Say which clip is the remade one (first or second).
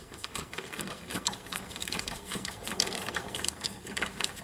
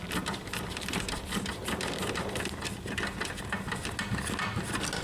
first